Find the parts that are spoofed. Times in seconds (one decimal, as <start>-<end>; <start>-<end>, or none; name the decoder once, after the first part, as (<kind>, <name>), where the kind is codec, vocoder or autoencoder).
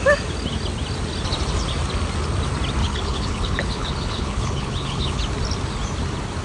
2.8-5.2 (codec, HILCodec)